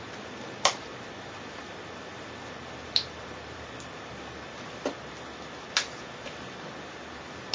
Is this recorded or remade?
remade